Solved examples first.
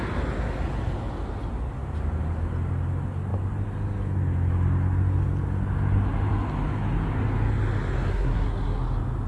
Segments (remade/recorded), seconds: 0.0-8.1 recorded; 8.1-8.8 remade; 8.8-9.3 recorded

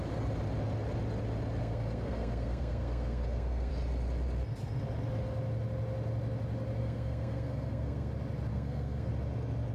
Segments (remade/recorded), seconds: 0.0-1.6 recorded; 1.6-3.7 remade; 3.7-6.8 recorded; 6.8-8.1 remade; 8.1-8.5 recorded; 8.5-9.1 remade; 9.1-9.7 recorded

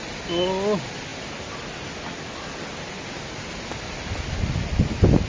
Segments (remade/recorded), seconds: 0.0-5.3 recorded

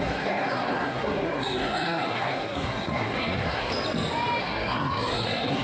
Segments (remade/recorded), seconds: 0.0-3.7 remade; 3.7-4.4 recorded; 4.4-5.6 remade

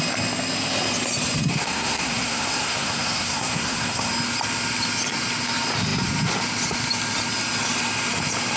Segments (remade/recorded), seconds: 0.0-1.5 recorded; 1.5-4.1 remade; 4.1-8.6 recorded

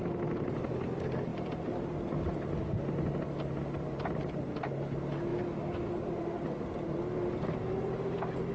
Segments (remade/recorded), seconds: 0.0-8.5 recorded

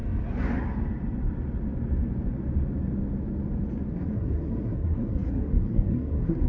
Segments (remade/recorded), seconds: 0.0-3.9 recorded; 3.9-6.5 remade

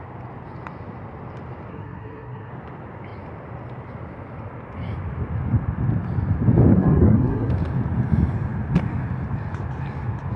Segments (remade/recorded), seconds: 0.0-1.7 recorded; 1.7-2.5 remade; 2.5-6.7 recorded; 6.7-7.5 remade; 7.5-10.4 recorded